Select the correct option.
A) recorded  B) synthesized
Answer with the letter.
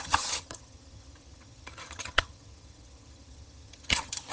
B